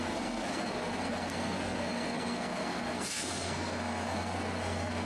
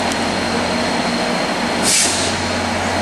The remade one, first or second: first